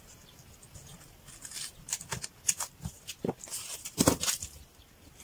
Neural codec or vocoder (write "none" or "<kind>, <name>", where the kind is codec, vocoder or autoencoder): none